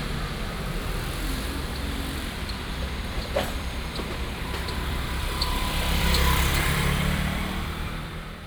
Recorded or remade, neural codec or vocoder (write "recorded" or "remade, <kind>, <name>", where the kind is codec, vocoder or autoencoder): remade, vocoder, BigVGAN v2